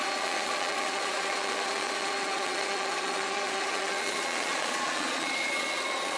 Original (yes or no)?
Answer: no